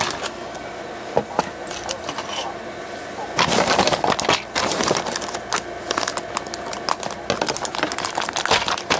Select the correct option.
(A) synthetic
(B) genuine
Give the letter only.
B